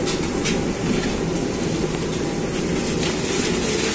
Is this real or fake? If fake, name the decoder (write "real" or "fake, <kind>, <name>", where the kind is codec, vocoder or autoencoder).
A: real